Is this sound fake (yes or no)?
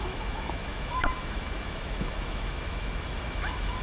yes